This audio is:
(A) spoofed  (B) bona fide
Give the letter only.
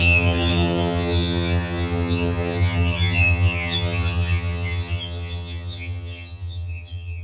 A